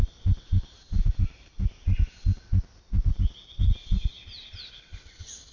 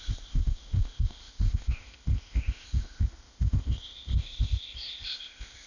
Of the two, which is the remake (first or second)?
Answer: second